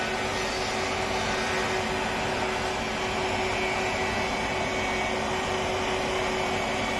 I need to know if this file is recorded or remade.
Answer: recorded